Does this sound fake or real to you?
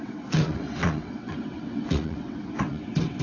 fake